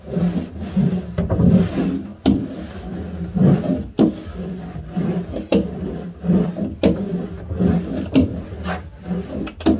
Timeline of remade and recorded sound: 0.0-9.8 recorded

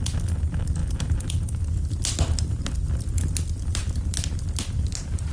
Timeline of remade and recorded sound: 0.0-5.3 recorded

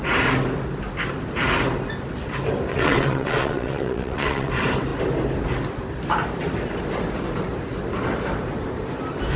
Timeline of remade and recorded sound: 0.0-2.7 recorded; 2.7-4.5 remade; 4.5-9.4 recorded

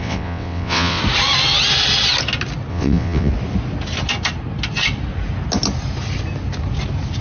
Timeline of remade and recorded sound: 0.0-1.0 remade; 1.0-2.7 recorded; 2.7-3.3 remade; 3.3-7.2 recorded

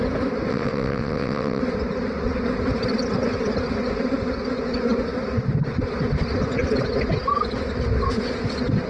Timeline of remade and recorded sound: 0.0-0.5 recorded; 0.5-1.6 remade; 1.6-8.9 recorded

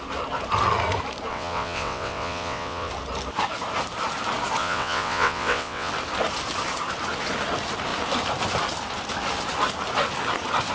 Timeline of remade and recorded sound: 0.0-1.3 recorded; 1.3-2.9 remade; 2.9-4.6 recorded; 4.6-5.9 remade; 5.9-10.7 recorded